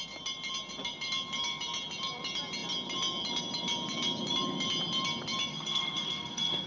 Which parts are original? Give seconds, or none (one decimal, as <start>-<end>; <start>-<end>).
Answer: 0.0-5.5